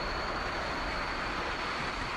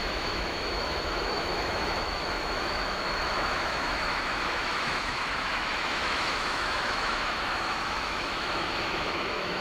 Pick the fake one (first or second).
second